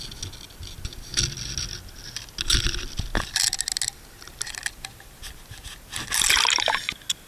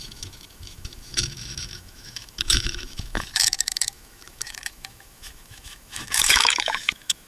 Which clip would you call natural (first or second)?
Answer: first